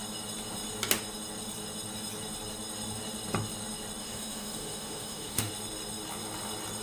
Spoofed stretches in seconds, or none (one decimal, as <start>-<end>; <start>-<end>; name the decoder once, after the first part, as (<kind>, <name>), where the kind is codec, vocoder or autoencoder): 4.0-5.5 (autoencoder, DAC-VAE)